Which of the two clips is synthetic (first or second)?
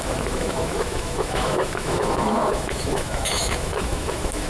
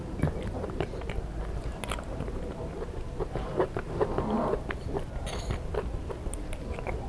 first